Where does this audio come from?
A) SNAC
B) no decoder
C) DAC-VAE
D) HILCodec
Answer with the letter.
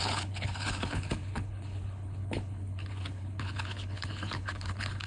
D